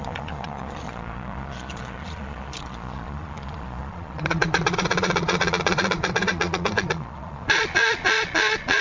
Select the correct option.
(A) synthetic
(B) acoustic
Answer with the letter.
A